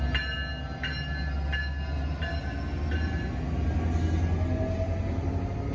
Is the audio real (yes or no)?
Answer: yes